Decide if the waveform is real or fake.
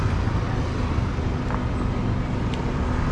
real